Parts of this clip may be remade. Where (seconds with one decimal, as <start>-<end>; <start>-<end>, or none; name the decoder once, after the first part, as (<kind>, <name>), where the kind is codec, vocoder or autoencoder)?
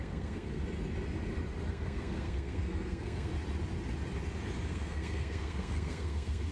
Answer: 0.0-0.6 (codec, SNAC); 1.7-3.3; 4.7-6.5